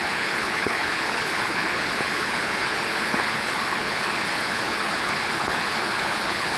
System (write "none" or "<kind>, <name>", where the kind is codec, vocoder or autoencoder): codec, HILCodec